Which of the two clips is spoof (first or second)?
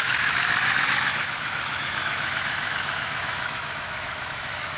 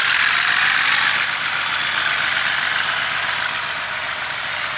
first